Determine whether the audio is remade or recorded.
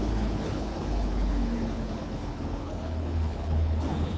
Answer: remade